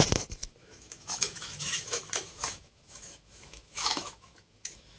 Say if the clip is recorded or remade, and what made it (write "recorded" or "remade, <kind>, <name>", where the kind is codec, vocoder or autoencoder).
remade, autoencoder, DAC-VAE